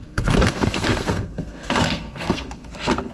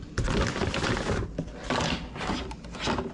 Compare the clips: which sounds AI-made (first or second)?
first